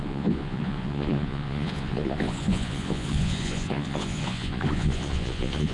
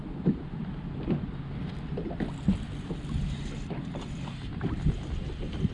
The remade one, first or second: first